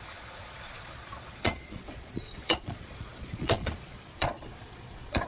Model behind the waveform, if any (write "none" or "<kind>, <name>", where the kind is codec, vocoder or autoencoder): vocoder, Vocos